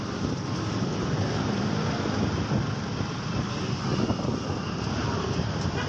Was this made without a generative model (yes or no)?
yes